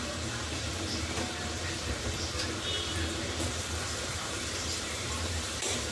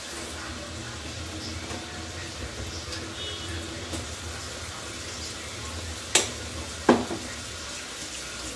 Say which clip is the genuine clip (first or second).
second